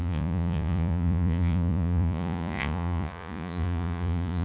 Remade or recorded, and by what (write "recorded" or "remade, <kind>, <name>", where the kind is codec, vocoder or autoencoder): remade, vocoder, Vocos